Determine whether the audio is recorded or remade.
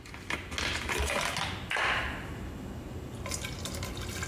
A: recorded